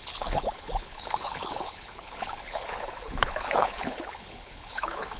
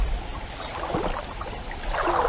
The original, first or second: second